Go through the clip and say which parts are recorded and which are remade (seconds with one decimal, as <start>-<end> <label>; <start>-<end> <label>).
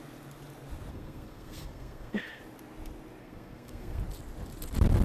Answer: 0.0-0.9 recorded; 0.9-2.4 remade; 2.4-3.2 recorded; 3.2-4.0 remade; 4.0-5.0 recorded